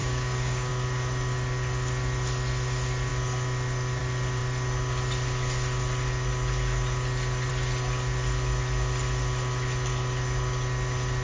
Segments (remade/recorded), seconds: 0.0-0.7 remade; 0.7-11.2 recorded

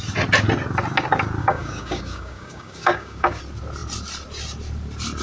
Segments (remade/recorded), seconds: 0.0-1.4 recorded; 1.4-3.4 remade; 3.4-5.2 recorded

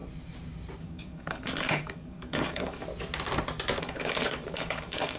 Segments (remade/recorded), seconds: 0.0-0.8 recorded; 0.8-2.9 remade; 2.9-3.8 recorded; 3.8-5.2 remade

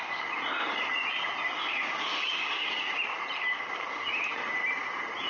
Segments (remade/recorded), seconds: 0.0-1.6 recorded; 1.6-2.9 remade; 2.9-5.3 recorded

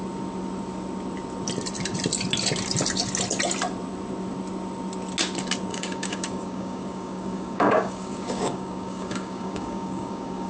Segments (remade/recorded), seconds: 0.0-5.7 recorded; 5.7-10.5 remade

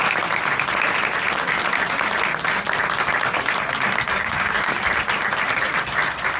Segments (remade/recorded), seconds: 0.0-4.1 recorded; 4.1-4.7 remade; 4.7-6.4 recorded

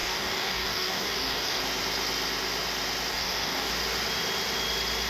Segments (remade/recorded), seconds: 0.0-1.6 remade; 1.6-3.1 recorded; 3.1-3.7 remade; 3.7-5.1 recorded

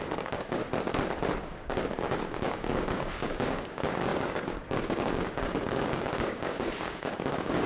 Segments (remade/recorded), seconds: 0.0-0.6 remade; 0.6-1.4 recorded; 1.4-7.7 remade